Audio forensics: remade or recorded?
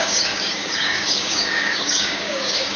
remade